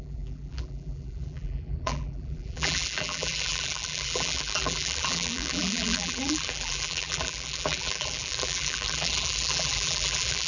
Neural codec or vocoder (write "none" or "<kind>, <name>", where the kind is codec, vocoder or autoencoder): vocoder, BigVGAN v2